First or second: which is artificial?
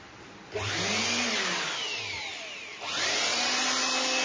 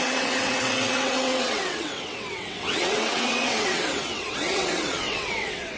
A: second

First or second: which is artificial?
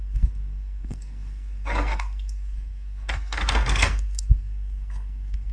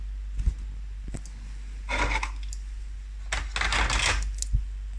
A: first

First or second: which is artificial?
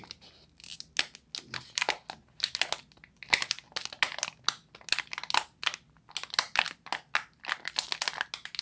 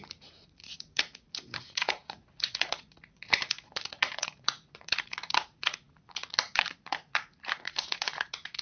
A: second